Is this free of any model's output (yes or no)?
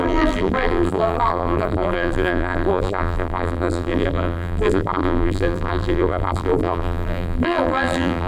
no